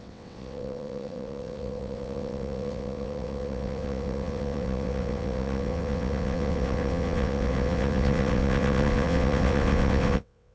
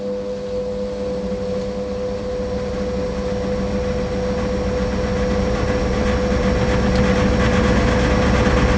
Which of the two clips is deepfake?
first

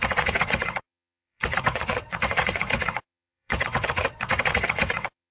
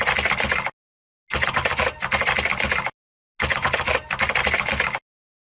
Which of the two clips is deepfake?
first